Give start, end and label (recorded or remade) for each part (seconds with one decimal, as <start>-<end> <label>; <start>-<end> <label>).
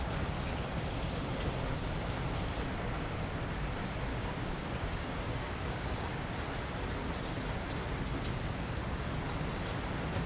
0.0-4.1 recorded; 4.1-6.3 remade; 6.3-10.3 recorded